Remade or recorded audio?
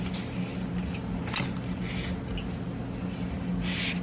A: recorded